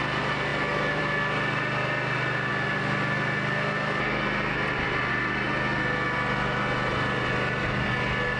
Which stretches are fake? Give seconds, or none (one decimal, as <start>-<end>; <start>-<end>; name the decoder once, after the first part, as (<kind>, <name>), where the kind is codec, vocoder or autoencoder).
none